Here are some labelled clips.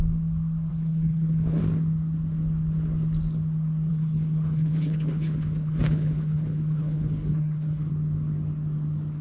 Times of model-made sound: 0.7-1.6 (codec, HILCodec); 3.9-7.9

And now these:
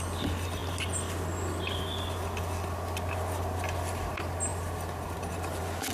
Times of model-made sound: none

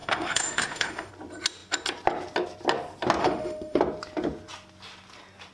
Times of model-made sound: 0.0-1.1 (autoencoder, DAC-VAE); 3.2-3.8

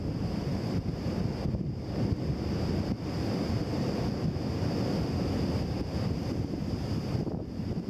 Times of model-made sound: none

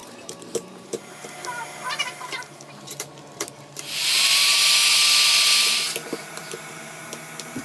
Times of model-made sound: 0.0-4.6 (vocoder, BigVGAN v2); 6.0-7.0